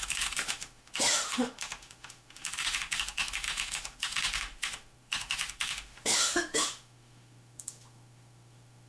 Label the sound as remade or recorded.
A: remade